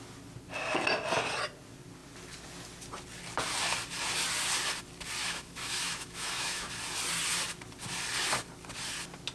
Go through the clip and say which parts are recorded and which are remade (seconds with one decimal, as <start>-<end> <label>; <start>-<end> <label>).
0.0-5.2 recorded; 5.2-6.7 remade; 6.7-9.3 recorded